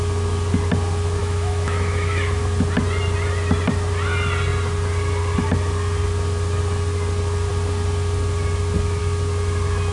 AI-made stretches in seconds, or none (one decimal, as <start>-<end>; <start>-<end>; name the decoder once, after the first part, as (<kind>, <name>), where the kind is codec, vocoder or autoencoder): 1.2-2.4 (autoencoder, DAC-VAE)